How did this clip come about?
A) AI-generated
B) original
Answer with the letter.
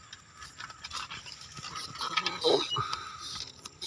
B